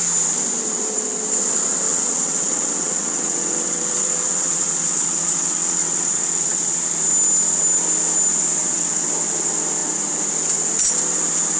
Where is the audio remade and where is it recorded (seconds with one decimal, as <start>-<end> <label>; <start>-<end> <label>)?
0.0-1.9 recorded; 1.9-6.9 remade; 6.9-8.6 recorded; 8.6-9.1 remade; 9.1-11.6 recorded